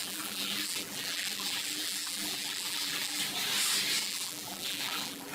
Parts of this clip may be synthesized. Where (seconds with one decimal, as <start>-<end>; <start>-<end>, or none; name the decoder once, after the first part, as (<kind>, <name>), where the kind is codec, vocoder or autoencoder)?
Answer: 0.0-3.2 (vocoder, BigVGAN v2); 4.0-5.3